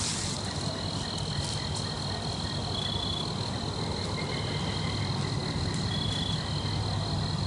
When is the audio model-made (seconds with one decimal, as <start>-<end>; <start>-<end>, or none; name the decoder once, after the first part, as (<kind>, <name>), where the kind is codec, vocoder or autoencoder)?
none